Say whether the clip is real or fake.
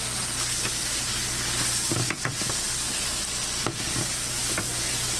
real